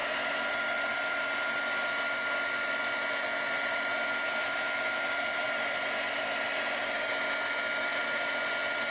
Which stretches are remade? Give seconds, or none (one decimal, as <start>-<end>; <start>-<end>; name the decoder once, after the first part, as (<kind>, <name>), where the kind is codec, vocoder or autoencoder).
7.9-8.5 (vocoder, BigVGAN v2)